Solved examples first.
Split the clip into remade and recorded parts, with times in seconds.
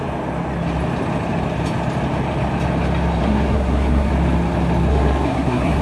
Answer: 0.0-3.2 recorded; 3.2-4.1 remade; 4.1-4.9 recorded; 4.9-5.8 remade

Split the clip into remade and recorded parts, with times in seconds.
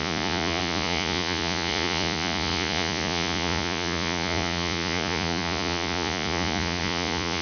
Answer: 0.0-7.4 remade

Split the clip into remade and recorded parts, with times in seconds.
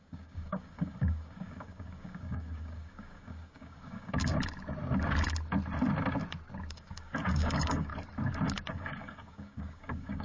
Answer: 0.0-4.3 remade; 4.3-6.7 recorded; 6.7-7.9 remade; 7.9-8.7 recorded; 8.7-10.2 remade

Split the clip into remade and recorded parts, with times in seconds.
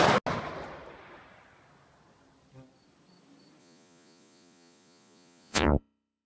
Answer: 0.0-3.6 recorded; 3.6-6.3 remade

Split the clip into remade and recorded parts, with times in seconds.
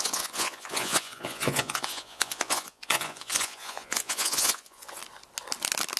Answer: 0.0-5.0 remade; 5.0-6.0 recorded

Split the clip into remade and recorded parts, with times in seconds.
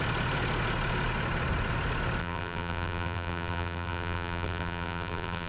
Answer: 0.0-2.2 recorded; 2.2-5.5 remade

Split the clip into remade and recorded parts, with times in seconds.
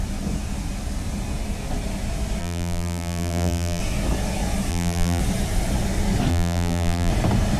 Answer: 0.0-2.4 recorded; 2.4-3.8 remade; 3.8-4.7 recorded; 4.7-5.2 remade; 5.2-6.3 recorded; 6.3-7.1 remade; 7.1-7.6 recorded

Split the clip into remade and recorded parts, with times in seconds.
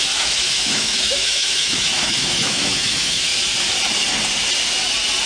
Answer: 0.0-3.3 remade; 3.3-5.3 recorded